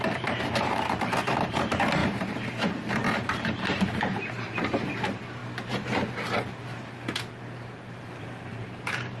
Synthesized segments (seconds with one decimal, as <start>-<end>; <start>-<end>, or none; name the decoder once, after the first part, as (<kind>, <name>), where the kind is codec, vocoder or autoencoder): 0.0-2.0 (vocoder, BigVGAN v2); 3.1-5.4; 8.2-9.2